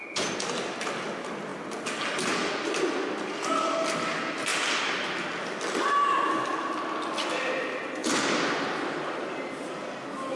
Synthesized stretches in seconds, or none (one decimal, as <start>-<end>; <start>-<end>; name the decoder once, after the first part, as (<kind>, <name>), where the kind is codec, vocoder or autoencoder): none